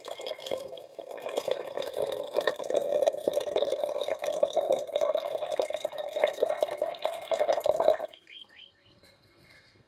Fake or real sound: fake